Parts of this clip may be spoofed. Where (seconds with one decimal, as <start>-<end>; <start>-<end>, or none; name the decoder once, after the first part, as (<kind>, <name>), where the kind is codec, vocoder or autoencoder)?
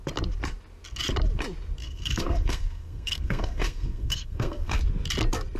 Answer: 1.8-4.8 (codec, SNAC)